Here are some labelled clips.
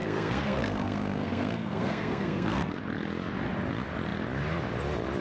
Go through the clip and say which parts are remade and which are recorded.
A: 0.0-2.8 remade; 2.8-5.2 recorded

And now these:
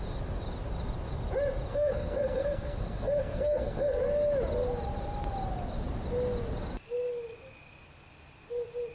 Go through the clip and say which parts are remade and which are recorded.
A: 0.0-1.7 recorded; 1.7-4.0 remade; 4.0-8.9 recorded

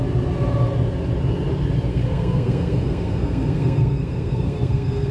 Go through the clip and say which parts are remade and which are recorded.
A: 0.0-1.9 recorded; 1.9-5.1 remade

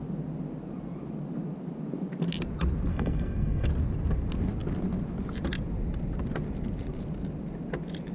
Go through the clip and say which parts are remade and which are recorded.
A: 0.0-2.9 recorded; 2.9-3.7 remade; 3.7-8.1 recorded

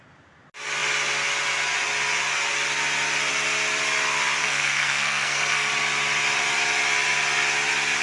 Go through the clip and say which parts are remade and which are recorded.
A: 0.0-4.4 recorded; 4.4-5.7 remade; 5.7-8.0 recorded

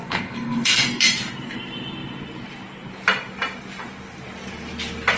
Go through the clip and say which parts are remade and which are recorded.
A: 0.0-1.0 remade; 1.0-5.2 recorded

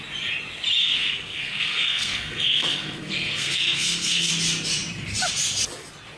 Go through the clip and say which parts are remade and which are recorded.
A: 0.0-0.8 recorded; 0.8-4.3 remade; 4.3-6.2 recorded

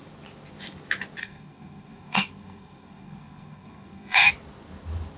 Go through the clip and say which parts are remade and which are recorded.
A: 0.0-1.2 recorded; 1.2-4.3 remade; 4.3-5.2 recorded